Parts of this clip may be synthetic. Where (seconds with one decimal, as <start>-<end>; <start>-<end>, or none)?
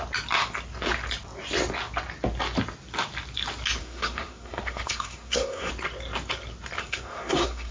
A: 3.8-5.7; 6.8-7.7